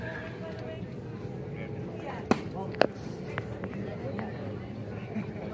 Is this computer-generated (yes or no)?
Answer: no